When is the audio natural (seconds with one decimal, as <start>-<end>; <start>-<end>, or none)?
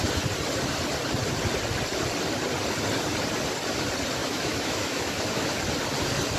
0.0-4.2; 5.6-6.4